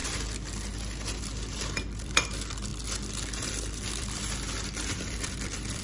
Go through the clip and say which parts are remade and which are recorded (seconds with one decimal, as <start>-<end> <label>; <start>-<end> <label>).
0.0-1.2 recorded; 1.2-5.8 remade